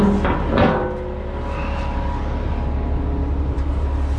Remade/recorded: recorded